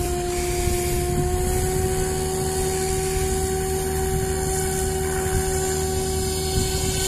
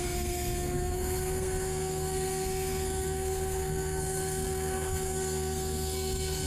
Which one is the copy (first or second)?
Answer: second